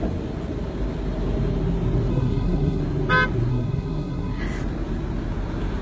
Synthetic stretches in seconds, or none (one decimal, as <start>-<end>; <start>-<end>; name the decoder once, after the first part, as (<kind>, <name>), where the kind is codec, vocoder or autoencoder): 2.1-2.8 (codec, SNAC); 3.5-4.4